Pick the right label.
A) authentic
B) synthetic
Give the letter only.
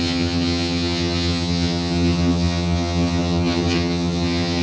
B